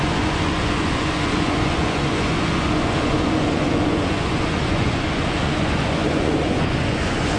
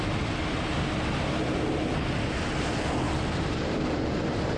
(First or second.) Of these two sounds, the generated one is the first